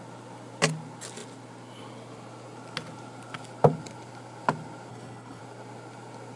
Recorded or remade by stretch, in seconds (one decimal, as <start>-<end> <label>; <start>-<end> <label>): 0.0-4.9 recorded; 4.9-5.4 remade; 5.4-6.4 recorded